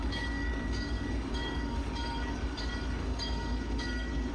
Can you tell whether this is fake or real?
fake